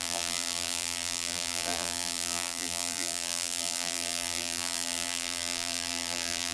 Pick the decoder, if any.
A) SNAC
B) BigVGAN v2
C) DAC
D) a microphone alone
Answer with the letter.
B